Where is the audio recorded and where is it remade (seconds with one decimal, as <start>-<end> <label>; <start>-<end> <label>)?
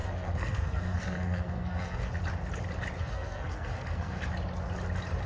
0.0-2.1 remade; 2.1-3.0 recorded; 3.0-4.2 remade; 4.2-5.3 recorded